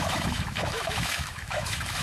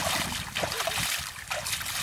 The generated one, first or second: first